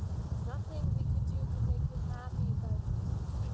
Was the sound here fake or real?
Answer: real